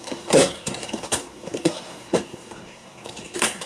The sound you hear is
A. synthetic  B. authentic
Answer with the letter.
A